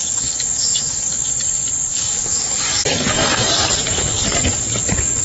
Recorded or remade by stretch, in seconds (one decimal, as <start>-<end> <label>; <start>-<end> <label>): 0.0-1.3 remade; 1.3-1.9 recorded; 1.9-3.5 remade; 3.5-5.2 recorded